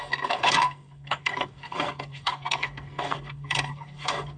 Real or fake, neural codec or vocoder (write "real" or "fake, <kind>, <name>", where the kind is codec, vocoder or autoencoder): fake, codec, SNAC